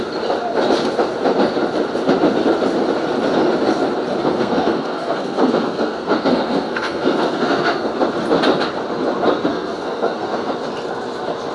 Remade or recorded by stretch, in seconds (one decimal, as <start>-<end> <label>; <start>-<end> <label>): 0.0-4.2 recorded; 4.2-7.9 remade; 7.9-9.5 recorded; 9.5-10.5 remade; 10.5-11.5 recorded